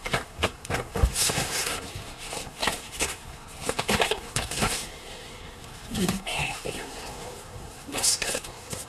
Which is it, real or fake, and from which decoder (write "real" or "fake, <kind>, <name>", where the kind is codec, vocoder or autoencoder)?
fake, codec, SNAC